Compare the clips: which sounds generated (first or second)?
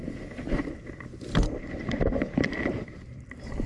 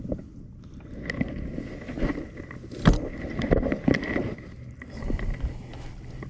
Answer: first